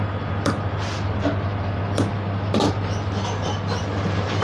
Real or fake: real